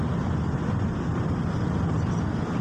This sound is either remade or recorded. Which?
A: recorded